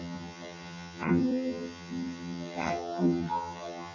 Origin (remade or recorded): remade